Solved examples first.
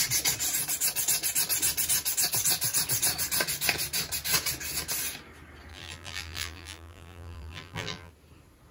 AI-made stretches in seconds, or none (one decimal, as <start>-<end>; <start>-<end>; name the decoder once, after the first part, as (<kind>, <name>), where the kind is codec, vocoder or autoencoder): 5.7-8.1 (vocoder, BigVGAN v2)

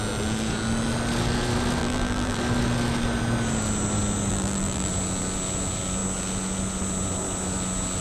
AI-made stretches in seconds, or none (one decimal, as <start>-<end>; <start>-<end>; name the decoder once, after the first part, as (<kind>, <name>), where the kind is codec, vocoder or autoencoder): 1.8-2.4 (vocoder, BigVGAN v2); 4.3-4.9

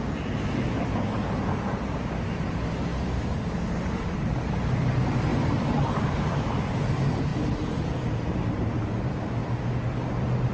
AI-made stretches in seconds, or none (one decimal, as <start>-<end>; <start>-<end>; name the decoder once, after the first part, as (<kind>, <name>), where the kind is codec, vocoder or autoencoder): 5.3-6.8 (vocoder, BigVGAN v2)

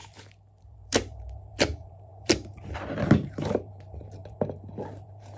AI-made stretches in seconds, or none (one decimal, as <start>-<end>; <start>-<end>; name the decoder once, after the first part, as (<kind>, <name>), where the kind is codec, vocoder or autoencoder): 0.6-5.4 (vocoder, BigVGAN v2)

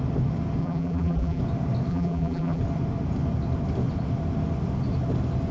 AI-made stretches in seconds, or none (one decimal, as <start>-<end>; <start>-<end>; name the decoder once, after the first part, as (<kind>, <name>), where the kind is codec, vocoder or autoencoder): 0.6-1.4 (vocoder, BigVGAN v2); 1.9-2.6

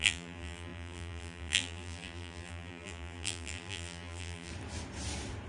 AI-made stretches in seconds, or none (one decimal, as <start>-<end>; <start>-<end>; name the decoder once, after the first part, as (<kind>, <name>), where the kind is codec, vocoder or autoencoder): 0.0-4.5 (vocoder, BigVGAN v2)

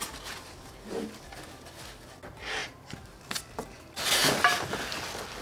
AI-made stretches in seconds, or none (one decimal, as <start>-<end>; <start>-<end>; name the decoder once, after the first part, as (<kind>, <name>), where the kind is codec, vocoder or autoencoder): 2.6-3.2 (vocoder, BigVGAN v2)